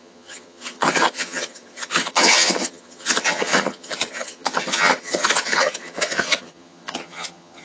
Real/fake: fake